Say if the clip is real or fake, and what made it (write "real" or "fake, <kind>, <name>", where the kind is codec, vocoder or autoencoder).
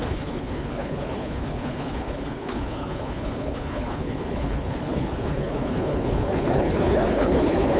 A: fake, codec, HILCodec